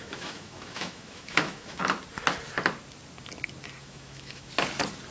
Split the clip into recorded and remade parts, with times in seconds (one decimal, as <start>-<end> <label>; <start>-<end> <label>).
0.0-1.8 remade; 1.8-3.8 recorded; 3.8-4.5 remade; 4.5-5.1 recorded

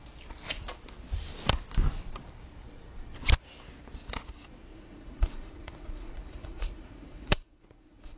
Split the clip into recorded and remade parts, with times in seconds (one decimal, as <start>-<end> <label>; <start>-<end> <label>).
0.0-4.7 recorded; 4.7-8.2 remade